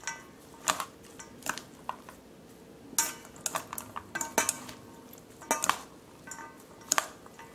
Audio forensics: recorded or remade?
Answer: recorded